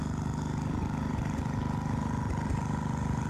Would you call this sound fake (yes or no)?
no